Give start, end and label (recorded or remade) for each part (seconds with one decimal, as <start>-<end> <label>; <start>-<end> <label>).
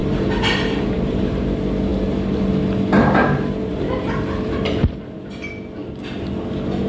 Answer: 0.0-1.4 remade; 1.4-3.7 recorded; 3.7-5.3 remade; 5.3-6.9 recorded